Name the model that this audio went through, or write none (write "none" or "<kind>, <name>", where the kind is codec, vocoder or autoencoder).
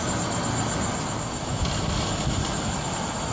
none